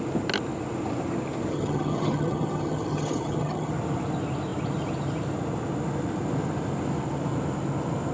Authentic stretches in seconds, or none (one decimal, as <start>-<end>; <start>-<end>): 0.0-1.5; 3.7-8.1